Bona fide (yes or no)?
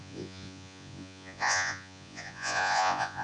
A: no